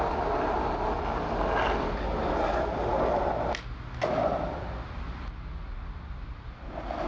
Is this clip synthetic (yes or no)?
no